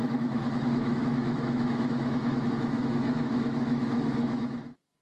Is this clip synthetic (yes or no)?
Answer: yes